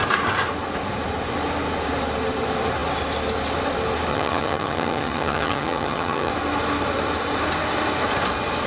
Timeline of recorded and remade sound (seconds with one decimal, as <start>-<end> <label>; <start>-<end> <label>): 0.0-4.1 recorded; 4.1-6.3 remade; 6.3-8.7 recorded